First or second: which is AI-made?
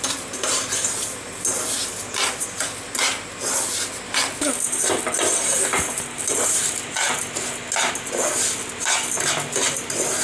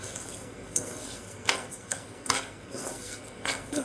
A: second